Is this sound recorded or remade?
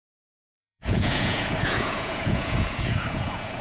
remade